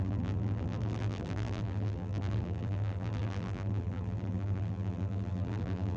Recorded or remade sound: remade